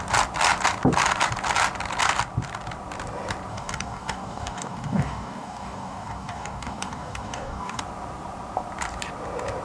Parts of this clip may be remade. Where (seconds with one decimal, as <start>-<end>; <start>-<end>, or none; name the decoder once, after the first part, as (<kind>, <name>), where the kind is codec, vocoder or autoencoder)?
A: 3.5-7.8 (codec, DAC)